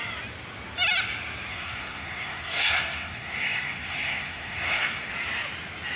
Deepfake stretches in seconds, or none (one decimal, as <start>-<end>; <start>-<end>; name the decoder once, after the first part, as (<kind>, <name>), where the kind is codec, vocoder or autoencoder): 1.5-5.1 (codec, SNAC)

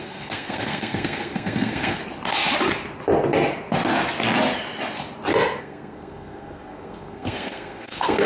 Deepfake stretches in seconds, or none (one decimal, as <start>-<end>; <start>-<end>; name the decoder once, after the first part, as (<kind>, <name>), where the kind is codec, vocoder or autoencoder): 0.0-2.0 (codec, SNAC); 5.6-8.3

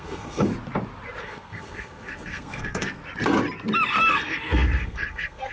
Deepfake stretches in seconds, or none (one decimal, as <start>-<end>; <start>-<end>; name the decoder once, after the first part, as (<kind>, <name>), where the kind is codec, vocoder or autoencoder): 0.0-0.5 (codec, SNAC); 1.2-3.0; 4.1-5.5

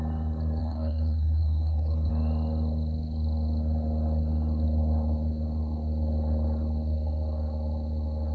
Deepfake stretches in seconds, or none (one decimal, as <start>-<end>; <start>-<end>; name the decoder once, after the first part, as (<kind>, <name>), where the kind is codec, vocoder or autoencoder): 0.6-2.1 (codec, SNAC)

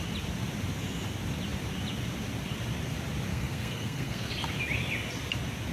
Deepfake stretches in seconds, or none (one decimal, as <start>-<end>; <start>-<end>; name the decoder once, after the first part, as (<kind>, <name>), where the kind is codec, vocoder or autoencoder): 3.3-4.3 (codec, SNAC)

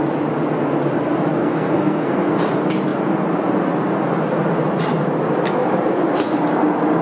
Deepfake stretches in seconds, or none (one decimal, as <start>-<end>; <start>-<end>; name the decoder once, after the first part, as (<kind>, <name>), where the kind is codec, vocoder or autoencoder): 1.4-2.4 (codec, SNAC)

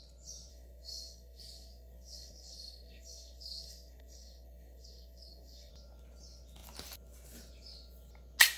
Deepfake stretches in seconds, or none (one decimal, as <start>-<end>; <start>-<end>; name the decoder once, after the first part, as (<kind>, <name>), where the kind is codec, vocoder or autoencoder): 0.5-5.7 (codec, SNAC)

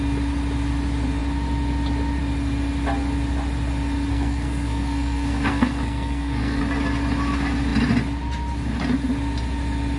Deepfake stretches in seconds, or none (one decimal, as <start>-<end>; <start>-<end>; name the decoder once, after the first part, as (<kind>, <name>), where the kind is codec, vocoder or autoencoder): 4.1-6.6 (codec, SNAC)